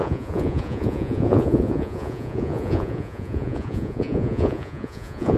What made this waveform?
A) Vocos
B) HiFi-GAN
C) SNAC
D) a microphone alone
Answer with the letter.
A